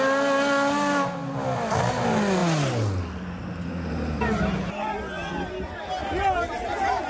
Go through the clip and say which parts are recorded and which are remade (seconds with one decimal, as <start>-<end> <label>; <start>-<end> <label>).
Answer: 0.0-7.1 recorded